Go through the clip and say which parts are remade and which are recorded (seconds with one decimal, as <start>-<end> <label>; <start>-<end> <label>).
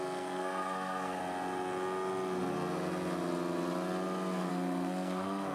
0.0-1.2 remade; 1.2-4.5 recorded; 4.5-5.5 remade